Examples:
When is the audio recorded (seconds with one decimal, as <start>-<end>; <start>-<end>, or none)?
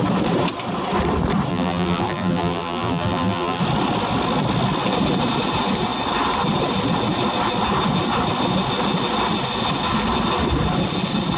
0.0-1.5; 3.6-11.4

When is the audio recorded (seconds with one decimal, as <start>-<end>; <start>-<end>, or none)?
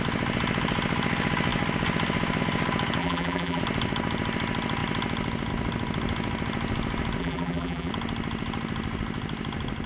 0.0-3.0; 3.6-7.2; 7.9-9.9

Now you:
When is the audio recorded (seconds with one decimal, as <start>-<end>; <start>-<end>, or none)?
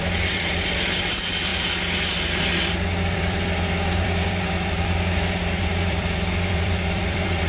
1.5-3.0